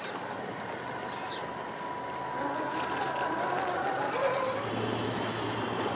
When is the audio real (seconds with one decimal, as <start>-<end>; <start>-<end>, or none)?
0.0-6.0